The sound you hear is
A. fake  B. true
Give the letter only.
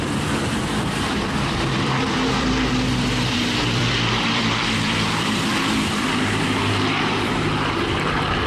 A